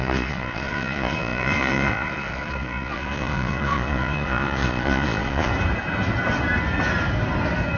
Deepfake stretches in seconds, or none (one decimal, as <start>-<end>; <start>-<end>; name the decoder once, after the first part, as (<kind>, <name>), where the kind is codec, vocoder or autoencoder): 0.0-5.5 (vocoder, Vocos)